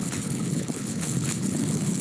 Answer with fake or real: fake